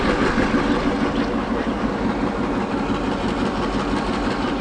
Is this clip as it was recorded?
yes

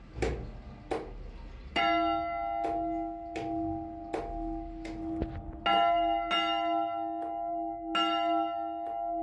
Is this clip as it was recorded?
yes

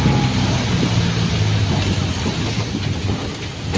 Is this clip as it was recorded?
yes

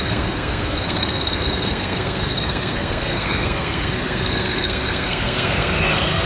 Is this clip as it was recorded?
no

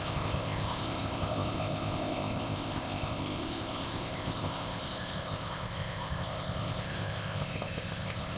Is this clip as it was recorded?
no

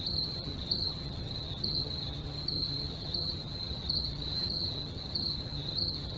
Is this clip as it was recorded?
no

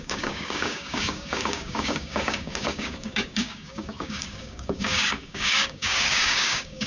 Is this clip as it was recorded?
no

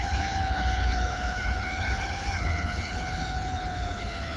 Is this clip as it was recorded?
no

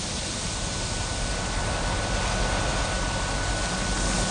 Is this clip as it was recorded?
yes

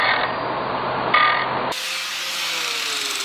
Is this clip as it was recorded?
yes